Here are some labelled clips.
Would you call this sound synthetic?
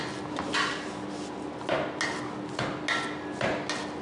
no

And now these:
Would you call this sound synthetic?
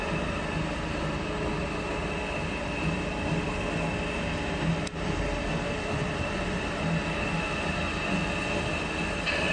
no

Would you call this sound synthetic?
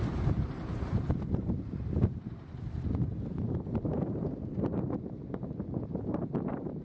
yes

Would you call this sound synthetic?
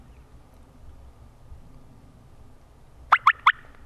no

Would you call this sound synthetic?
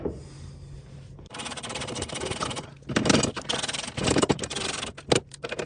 no